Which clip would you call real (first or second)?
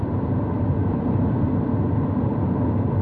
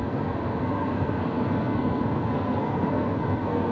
first